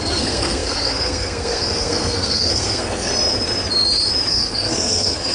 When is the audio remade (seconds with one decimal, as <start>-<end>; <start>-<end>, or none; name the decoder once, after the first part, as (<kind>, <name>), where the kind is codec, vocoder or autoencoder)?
0.0-3.1 (codec, SNAC); 4.3-5.3